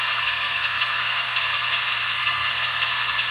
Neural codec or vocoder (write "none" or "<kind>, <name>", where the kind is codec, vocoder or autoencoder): codec, SNAC